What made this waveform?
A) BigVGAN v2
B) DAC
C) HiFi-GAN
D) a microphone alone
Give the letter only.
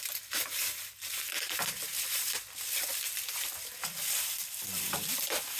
A